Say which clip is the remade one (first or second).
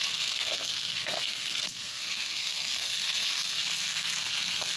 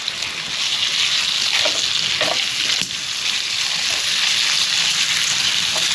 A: first